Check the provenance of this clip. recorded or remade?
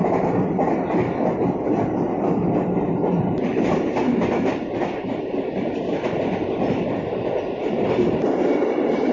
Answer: recorded